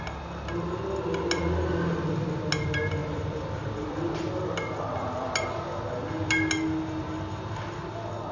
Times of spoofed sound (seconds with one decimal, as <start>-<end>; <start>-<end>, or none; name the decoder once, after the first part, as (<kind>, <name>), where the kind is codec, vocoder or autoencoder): 3.0-5.4 (vocoder, BigVGAN v2)